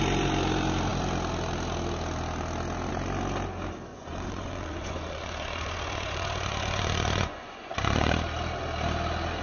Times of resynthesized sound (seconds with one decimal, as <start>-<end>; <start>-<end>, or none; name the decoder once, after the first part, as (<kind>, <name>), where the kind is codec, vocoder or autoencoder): 3.9-8.1 (vocoder, Vocos)